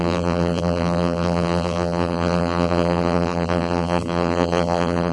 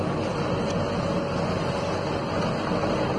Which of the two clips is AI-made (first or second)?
first